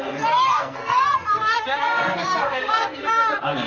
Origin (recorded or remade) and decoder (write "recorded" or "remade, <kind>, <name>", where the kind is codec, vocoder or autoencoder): remade, codec, SNAC